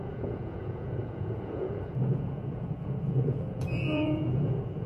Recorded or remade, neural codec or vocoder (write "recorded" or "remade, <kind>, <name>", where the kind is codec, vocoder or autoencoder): remade, vocoder, Vocos